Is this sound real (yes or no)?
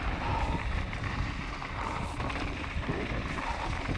yes